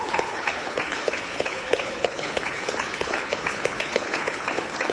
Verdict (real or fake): fake